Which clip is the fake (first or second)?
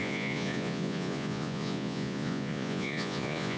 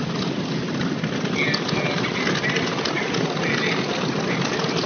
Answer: first